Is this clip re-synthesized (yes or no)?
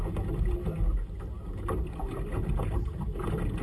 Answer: no